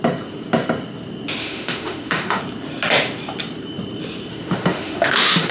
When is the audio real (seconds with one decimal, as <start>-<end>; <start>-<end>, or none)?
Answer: 0.0-1.4; 2.4-4.3